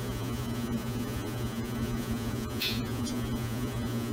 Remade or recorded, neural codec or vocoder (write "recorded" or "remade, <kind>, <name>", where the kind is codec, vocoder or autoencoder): remade, vocoder, Vocos